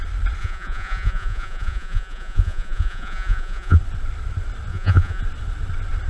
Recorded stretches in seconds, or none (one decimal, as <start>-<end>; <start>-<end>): 0.0-0.4; 3.8-4.7; 5.2-6.1